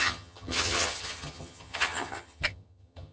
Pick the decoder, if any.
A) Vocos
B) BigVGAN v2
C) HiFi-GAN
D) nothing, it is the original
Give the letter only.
C